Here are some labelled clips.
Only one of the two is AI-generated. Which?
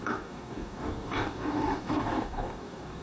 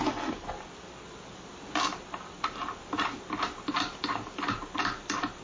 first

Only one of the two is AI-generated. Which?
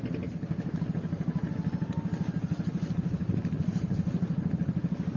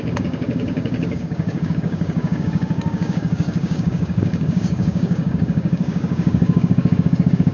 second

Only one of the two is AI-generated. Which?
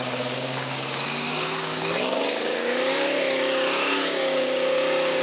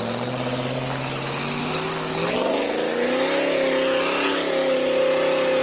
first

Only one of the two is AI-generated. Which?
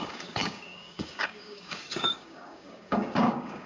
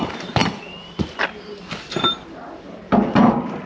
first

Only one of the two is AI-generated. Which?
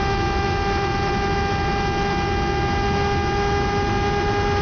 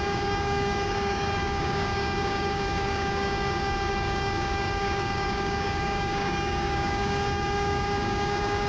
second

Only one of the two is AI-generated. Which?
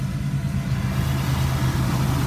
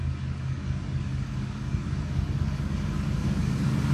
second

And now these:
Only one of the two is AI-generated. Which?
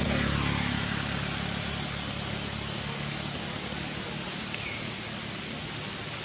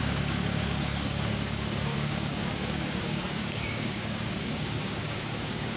second